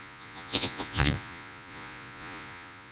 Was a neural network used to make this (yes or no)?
yes